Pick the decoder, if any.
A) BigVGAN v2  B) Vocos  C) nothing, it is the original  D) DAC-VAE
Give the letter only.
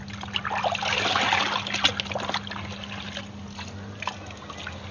C